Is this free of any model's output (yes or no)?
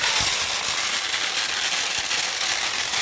yes